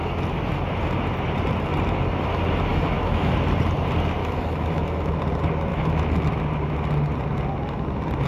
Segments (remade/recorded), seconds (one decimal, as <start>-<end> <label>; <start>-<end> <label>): 0.0-2.7 recorded; 2.7-3.3 remade; 3.3-4.2 recorded; 4.2-5.2 remade; 5.2-5.7 recorded; 5.7-6.3 remade; 6.3-8.3 recorded